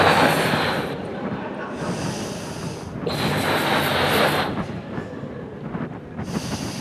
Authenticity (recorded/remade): recorded